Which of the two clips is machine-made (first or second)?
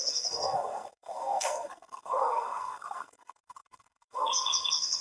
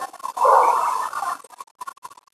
first